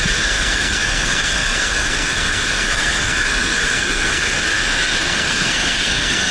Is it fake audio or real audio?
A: fake